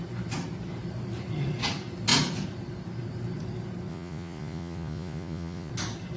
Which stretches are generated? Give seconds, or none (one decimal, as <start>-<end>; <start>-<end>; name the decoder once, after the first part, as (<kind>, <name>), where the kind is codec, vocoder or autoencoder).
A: 3.9-5.7 (vocoder, Vocos)